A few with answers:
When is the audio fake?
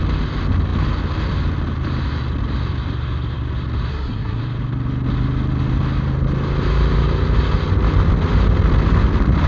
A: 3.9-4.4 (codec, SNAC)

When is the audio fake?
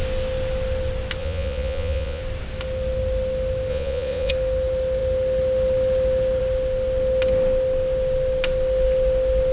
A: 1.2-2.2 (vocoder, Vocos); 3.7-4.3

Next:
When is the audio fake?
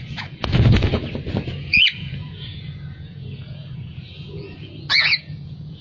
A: 0.0-1.0 (vocoder, Vocos); 1.6-5.8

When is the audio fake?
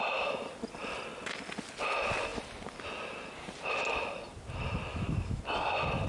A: 4.9-5.4 (autoencoder, DAC-VAE)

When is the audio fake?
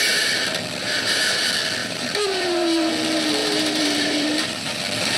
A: 0.8-1.4 (vocoder, BigVGAN v2); 1.8-2.9; 3.4-4.8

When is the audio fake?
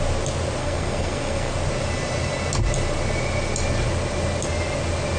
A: 0.6-1.5 (codec, SNAC)